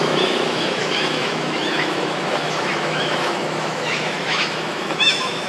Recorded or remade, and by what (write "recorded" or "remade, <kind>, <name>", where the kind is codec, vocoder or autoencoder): remade, autoencoder, DAC-VAE